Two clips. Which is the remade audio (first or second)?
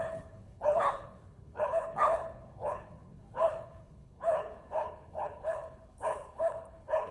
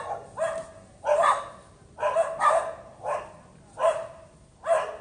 first